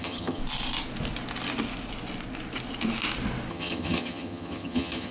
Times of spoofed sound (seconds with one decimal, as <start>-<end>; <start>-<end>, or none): 0.0-0.4; 3.5-5.1